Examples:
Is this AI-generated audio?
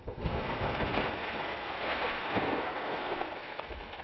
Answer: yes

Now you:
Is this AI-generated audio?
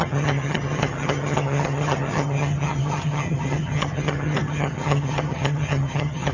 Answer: yes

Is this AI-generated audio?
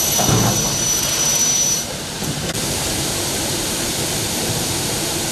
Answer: yes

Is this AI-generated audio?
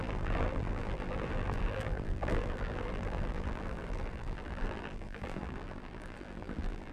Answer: yes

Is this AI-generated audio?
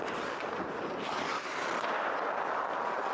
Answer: no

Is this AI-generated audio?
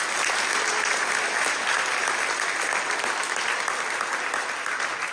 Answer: no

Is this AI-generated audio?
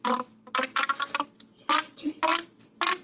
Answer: no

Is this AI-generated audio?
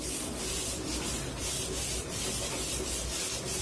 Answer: no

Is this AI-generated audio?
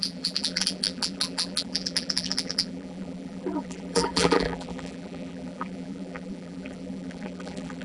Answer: yes